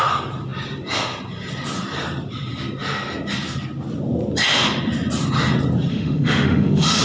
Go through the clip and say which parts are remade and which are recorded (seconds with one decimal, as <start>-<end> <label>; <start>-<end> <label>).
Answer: 0.0-5.9 recorded; 5.9-7.0 remade